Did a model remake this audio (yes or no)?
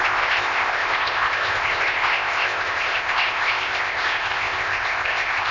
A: yes